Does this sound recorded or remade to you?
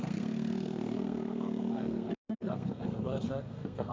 remade